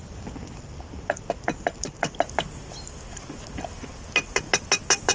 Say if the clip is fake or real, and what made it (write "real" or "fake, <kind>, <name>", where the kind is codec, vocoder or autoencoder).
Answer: real